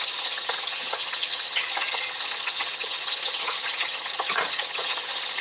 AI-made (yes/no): yes